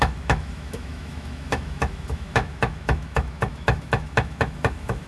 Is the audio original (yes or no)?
no